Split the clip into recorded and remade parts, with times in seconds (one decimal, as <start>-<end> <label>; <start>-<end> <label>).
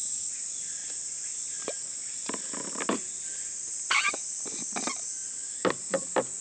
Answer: 0.0-6.4 recorded